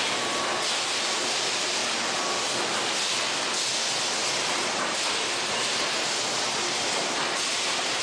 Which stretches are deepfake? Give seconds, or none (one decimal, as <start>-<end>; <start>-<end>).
4.2-8.0

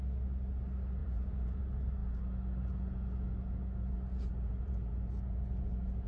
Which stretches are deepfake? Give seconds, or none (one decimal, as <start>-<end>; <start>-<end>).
1.0-1.6; 2.0-6.1

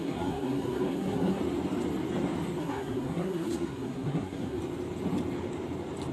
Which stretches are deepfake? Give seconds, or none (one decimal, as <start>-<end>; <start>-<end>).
0.0-1.4; 2.6-4.6

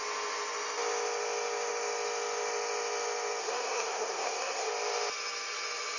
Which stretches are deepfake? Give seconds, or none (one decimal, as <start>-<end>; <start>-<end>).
3.4-4.7

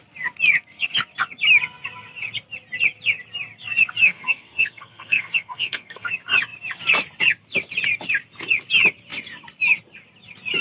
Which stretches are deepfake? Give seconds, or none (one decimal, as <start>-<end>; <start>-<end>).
4.0-6.1

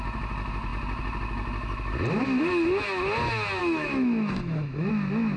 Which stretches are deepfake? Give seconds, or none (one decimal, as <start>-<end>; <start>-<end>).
3.6-4.9

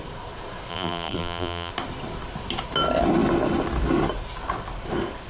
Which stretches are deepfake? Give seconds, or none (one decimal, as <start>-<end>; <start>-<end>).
0.7-1.7